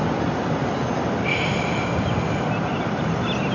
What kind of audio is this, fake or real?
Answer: real